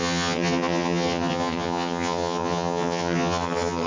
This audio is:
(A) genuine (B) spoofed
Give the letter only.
B